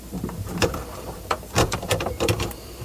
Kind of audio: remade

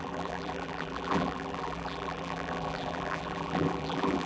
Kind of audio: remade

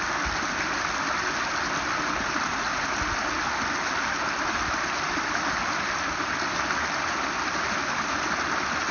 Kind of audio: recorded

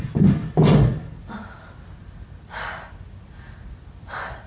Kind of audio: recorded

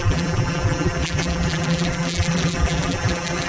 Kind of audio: remade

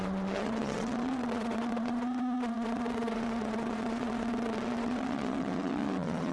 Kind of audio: remade